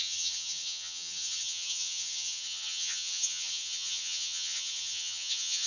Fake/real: fake